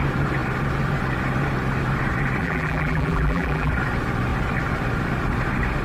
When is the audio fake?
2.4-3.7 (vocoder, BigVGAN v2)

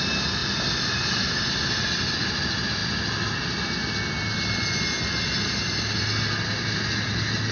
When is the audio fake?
none